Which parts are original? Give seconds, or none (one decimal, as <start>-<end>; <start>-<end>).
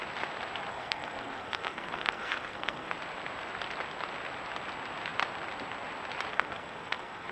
0.0-0.7; 2.9-6.3